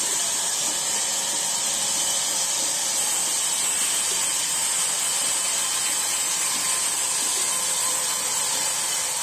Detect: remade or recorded recorded